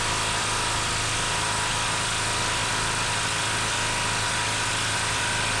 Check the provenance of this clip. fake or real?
real